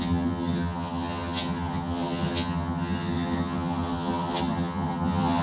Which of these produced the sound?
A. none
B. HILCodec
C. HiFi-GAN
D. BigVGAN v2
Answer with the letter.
C